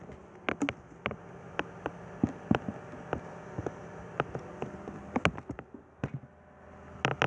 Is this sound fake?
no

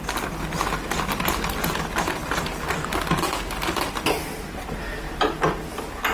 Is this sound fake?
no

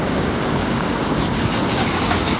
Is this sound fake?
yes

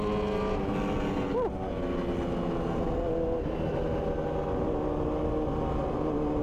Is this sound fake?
no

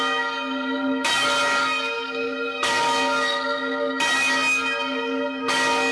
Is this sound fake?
yes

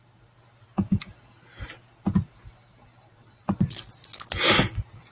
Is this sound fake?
no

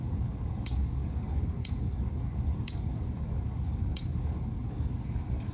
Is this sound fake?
yes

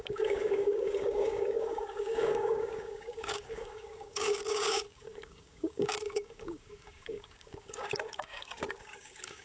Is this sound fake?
yes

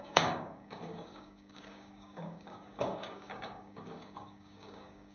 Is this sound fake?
yes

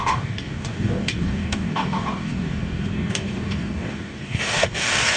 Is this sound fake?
yes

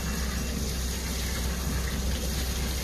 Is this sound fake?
no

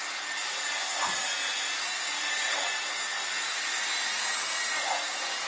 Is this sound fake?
no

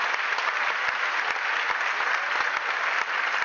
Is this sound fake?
no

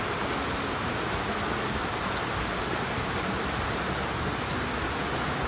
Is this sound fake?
no